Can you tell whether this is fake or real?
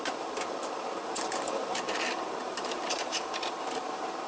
fake